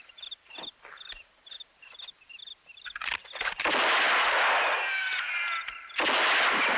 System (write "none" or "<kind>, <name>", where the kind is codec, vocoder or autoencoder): none